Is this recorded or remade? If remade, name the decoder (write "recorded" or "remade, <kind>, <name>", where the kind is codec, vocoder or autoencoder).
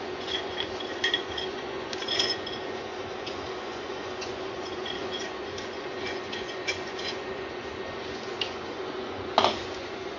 remade, vocoder, Vocos